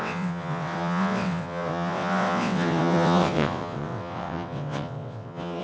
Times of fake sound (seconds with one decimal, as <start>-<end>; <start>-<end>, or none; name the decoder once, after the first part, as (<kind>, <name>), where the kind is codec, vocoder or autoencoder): 0.0-5.6 (vocoder, WaveNeXt)